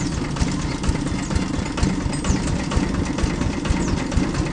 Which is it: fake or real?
real